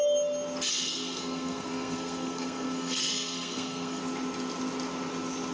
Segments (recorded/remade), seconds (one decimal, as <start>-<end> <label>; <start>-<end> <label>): 0.0-0.7 recorded; 0.7-4.0 remade; 4.0-5.5 recorded